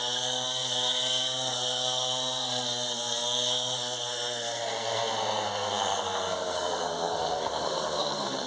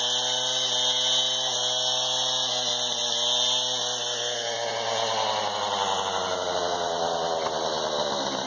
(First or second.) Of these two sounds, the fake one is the first